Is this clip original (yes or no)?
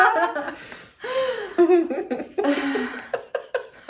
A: no